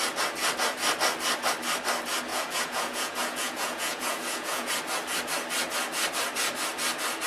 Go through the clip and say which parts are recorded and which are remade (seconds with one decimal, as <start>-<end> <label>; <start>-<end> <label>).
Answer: 0.0-2.3 recorded; 2.3-4.7 remade; 4.7-7.3 recorded